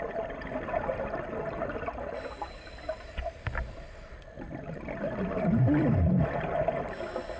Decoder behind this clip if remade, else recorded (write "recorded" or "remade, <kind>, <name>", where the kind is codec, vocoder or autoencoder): recorded